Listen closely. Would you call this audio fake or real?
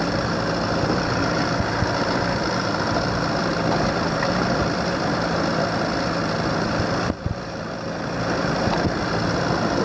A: real